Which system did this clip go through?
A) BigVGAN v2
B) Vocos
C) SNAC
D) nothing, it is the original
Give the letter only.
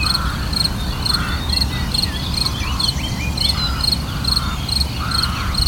D